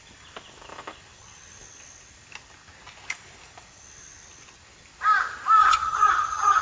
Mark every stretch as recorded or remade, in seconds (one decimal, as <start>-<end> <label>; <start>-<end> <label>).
0.0-5.6 recorded; 5.6-6.6 remade